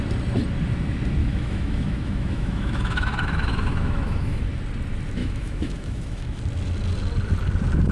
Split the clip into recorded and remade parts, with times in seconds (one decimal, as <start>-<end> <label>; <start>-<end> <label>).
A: 0.0-1.2 recorded; 1.2-4.4 remade; 4.4-5.2 recorded; 5.2-6.4 remade; 6.4-7.9 recorded

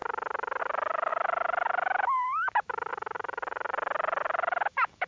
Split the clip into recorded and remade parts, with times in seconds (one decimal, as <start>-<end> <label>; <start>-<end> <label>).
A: 0.0-0.6 recorded; 0.6-3.4 remade; 3.4-4.2 recorded; 4.2-5.1 remade